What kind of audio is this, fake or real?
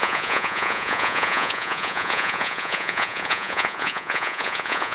fake